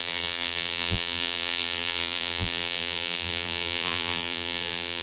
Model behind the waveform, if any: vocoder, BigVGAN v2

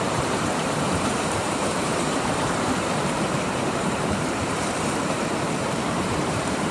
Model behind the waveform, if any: vocoder, BigVGAN v2